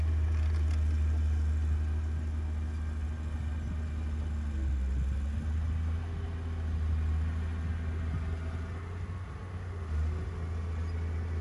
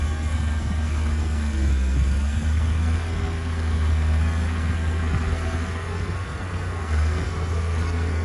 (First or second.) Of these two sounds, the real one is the first